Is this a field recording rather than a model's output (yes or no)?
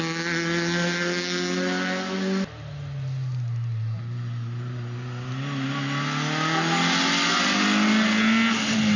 yes